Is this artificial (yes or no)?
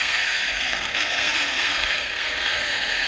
yes